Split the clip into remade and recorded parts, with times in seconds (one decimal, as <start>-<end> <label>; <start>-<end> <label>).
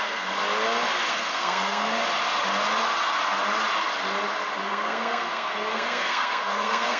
0.0-0.4 remade; 0.4-1.1 recorded; 1.1-2.0 remade; 2.0-4.6 recorded; 4.6-7.0 remade